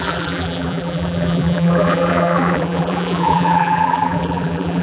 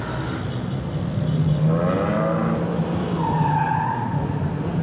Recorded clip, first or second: second